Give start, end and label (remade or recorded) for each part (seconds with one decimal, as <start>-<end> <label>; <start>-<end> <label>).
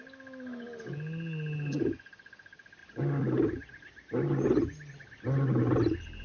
0.0-6.2 recorded